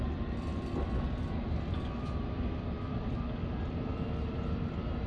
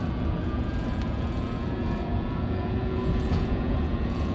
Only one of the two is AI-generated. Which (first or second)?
second